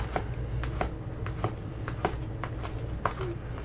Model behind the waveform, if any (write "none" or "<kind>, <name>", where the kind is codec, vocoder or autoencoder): none